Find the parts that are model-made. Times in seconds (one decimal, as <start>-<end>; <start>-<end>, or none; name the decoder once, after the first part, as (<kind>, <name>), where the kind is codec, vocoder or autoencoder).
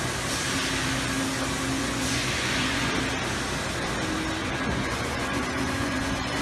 1.8-2.9 (vocoder, Vocos); 4.4-6.4